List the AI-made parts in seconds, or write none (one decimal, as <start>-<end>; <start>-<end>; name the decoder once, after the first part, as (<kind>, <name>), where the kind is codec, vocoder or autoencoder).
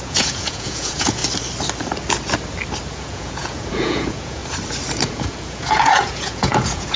0.0-1.2 (vocoder, Vocos); 2.9-4.4; 5.1-7.0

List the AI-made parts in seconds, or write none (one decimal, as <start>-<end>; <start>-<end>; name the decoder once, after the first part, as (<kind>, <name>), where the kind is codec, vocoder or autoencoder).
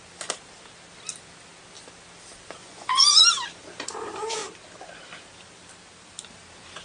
2.6-3.2 (vocoder, Vocos)